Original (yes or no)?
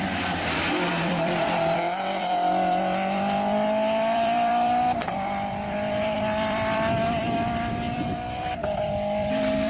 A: no